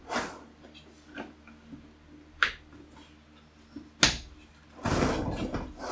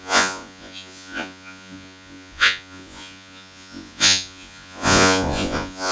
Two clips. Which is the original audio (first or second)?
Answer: first